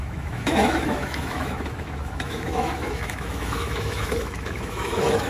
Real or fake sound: fake